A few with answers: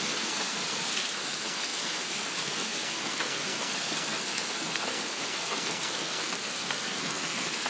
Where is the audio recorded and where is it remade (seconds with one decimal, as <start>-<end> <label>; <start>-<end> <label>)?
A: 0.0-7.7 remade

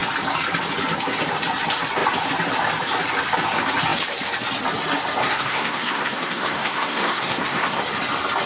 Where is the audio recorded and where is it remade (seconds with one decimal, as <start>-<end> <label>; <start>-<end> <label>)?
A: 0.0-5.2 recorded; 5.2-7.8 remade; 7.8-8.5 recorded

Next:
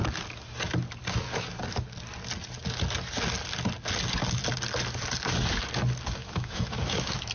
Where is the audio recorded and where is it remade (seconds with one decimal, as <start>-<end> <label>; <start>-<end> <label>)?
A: 0.0-6.2 recorded; 6.2-7.3 remade

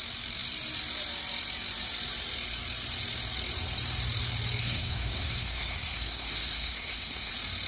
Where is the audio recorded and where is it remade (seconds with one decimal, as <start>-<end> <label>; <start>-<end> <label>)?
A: 0.0-4.6 recorded; 4.6-7.3 remade; 7.3-7.7 recorded

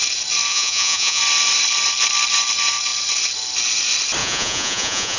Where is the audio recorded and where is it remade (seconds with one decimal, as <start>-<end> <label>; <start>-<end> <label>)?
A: 0.0-0.5 recorded; 0.5-1.2 remade; 1.2-4.2 recorded; 4.2-5.2 remade

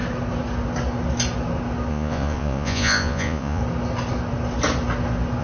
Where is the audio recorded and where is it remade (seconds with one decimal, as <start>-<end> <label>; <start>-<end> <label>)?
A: 0.0-1.9 recorded; 1.9-3.6 remade; 3.6-5.4 recorded

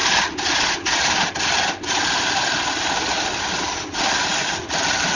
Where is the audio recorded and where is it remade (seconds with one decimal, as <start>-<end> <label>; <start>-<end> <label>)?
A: 0.0-5.2 recorded